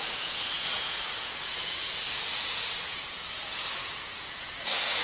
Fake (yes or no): yes